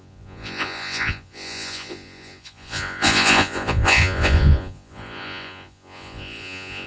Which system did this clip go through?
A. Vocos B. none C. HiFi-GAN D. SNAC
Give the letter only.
A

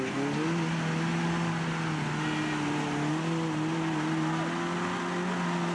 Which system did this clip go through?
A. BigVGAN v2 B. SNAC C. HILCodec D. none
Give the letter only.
D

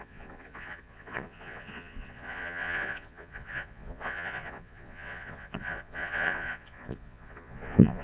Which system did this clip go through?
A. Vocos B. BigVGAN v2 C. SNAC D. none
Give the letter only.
A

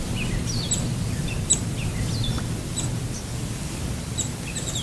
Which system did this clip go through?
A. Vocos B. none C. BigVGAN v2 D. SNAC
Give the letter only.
B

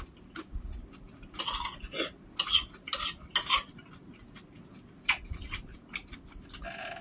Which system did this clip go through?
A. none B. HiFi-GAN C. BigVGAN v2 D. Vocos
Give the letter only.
A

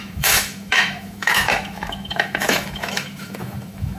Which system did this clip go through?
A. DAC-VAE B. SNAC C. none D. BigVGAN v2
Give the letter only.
A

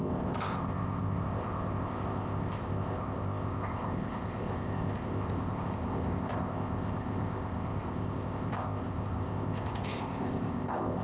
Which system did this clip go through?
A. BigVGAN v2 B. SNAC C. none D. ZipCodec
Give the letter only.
D